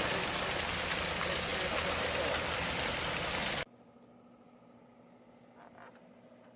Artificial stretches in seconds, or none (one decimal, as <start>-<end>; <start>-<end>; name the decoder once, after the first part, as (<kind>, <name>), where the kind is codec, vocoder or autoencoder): none